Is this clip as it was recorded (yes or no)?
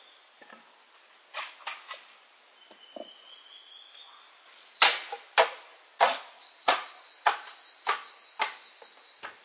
yes